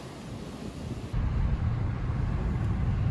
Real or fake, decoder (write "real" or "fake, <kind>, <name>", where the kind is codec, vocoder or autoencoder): real